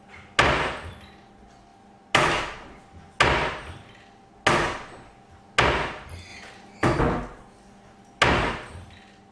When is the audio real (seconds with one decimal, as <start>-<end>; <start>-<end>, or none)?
0.0-9.3